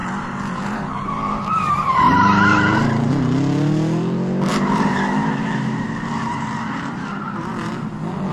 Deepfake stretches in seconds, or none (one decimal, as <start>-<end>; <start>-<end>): 0.0-3.1; 4.5-7.7